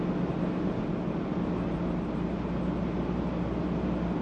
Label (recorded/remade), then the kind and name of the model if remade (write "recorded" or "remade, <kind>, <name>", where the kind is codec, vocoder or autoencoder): recorded